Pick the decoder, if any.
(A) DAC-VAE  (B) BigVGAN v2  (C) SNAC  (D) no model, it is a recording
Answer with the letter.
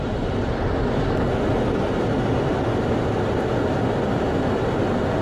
D